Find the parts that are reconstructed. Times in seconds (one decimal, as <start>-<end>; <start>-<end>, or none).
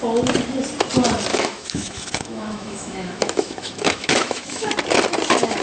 1.3-4.7